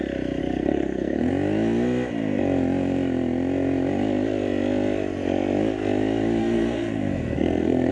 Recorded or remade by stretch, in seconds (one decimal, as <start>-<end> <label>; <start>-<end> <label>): 0.0-0.4 recorded; 0.4-1.3 remade; 1.3-6.4 recorded; 6.4-7.9 remade